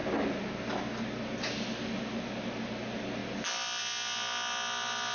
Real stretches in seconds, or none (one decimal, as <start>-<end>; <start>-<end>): 0.0-5.1